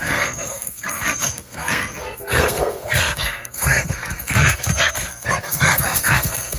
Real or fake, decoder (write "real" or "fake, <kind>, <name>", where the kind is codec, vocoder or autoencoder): fake, codec, SNAC